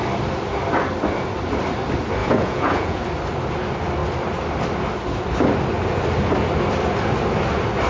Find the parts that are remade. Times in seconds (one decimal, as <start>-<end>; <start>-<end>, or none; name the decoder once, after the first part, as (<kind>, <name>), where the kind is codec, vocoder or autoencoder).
2.2-3.0 (vocoder, Vocos)